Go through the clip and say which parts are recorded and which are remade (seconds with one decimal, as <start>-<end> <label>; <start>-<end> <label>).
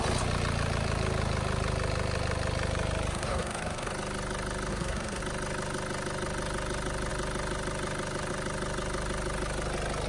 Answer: 0.0-3.1 recorded; 3.1-3.9 remade; 3.9-4.7 recorded; 4.7-5.2 remade; 5.2-10.1 recorded